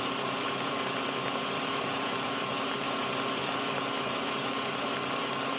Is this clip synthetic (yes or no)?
yes